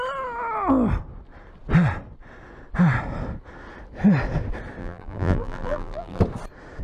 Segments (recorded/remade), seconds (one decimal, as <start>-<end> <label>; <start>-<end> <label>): 0.0-4.8 recorded; 4.8-6.2 remade; 6.2-6.8 recorded